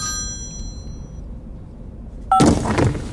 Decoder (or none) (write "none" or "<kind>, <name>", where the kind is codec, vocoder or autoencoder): none